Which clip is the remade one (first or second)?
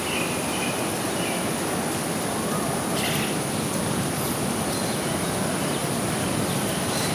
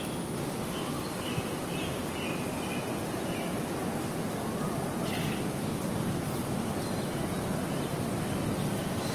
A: first